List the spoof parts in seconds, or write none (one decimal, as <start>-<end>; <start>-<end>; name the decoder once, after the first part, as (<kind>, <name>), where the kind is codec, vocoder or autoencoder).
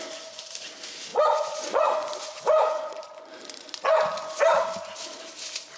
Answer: 1.1-4.4 (vocoder, Vocos)